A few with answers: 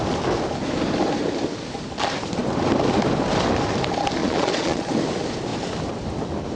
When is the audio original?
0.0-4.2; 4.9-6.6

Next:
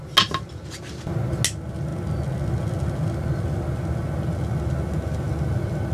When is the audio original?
0.0-5.9

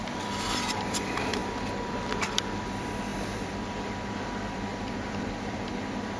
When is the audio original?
none

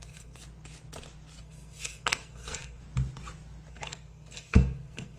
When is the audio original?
0.4-1.4; 2.8-3.7

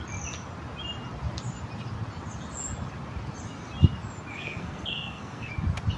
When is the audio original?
0.0-4.3; 5.5-6.0